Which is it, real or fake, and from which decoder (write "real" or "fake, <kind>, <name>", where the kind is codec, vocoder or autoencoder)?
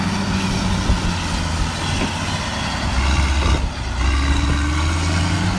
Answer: real